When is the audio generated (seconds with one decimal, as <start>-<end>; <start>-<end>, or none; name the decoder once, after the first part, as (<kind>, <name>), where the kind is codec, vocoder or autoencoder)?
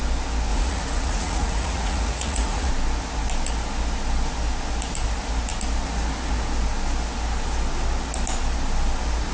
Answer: 0.5-2.7 (vocoder, Vocos)